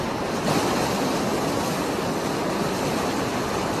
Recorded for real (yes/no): yes